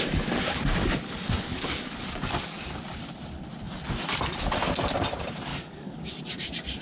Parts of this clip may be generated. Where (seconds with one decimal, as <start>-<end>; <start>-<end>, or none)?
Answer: 0.8-2.0; 5.5-6.2